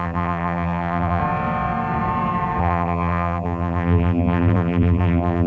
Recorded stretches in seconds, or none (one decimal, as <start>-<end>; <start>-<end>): 1.2-2.6

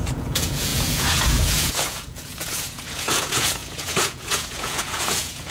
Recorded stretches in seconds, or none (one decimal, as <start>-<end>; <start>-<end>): none

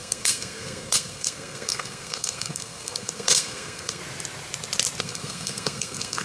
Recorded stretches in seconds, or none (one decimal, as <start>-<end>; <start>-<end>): 4.0-5.0

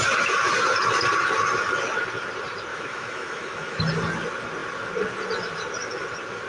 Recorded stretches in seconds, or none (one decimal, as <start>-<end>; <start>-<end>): 0.0-2.7; 3.8-6.5

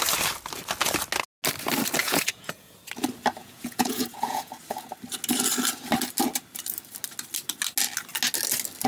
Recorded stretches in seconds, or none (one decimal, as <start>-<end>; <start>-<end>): 0.0-2.0; 2.7-3.4; 4.5-8.9

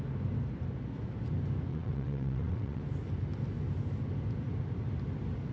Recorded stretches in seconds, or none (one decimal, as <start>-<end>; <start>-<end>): 0.0-1.7; 2.8-5.5

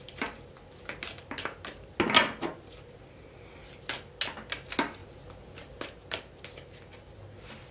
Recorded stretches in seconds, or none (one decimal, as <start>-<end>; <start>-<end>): 0.0-7.7